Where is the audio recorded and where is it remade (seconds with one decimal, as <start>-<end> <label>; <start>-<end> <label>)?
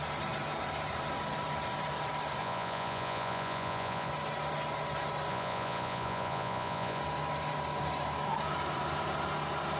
0.0-2.4 recorded; 2.4-4.1 remade; 4.1-5.3 recorded; 5.3-7.0 remade; 7.0-9.8 recorded